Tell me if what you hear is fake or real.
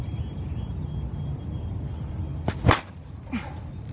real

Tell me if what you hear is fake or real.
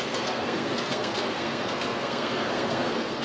fake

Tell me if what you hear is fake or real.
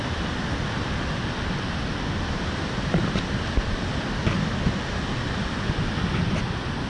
real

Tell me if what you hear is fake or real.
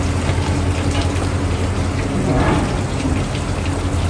real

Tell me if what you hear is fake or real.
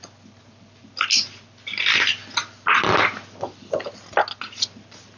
real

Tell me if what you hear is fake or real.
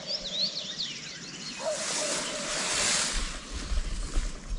real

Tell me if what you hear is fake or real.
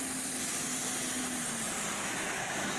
real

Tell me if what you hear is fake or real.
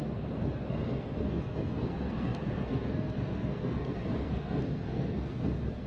fake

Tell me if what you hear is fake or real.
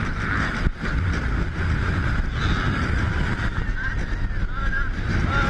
real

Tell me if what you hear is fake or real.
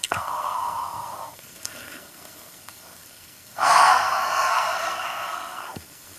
fake